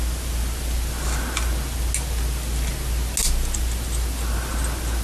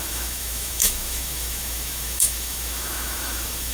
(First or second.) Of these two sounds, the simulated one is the second